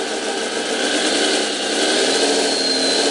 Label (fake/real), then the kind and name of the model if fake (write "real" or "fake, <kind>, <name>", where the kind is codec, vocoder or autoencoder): real